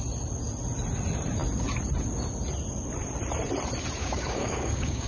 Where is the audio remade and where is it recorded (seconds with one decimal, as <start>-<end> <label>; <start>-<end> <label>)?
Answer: 0.0-4.0 recorded; 4.0-5.1 remade